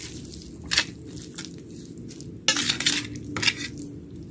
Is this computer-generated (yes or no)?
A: no